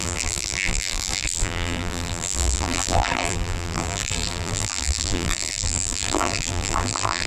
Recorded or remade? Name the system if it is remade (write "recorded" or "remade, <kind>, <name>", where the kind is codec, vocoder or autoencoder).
remade, vocoder, BigVGAN v2